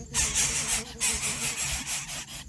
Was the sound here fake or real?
real